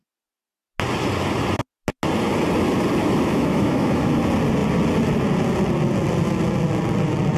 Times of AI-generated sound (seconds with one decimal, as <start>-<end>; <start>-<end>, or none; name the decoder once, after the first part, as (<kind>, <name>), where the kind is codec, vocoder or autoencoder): 3.0-4.1 (autoencoder, DAC-VAE)